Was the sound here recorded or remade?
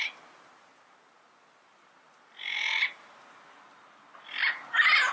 recorded